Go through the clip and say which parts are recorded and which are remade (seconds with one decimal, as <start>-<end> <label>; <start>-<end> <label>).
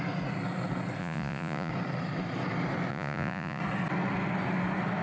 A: 0.0-1.0 recorded; 1.0-1.7 remade; 1.7-2.9 recorded; 2.9-3.6 remade; 3.6-5.0 recorded